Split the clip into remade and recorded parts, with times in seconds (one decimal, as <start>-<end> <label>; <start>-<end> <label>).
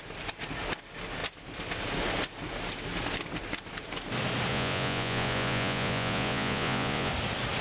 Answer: 0.0-4.5 recorded; 4.5-7.1 remade; 7.1-7.6 recorded